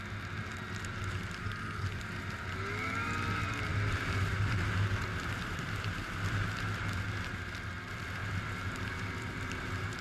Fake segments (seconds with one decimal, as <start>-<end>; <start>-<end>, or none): 3.7-6.5